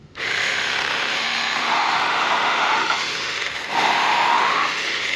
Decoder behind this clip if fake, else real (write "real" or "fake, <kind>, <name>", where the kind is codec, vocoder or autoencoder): fake, autoencoder, DAC-VAE